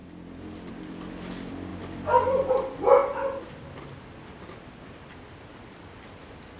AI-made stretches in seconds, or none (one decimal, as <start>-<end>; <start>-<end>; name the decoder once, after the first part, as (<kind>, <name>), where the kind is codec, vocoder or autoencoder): none